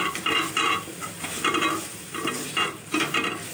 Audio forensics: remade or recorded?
remade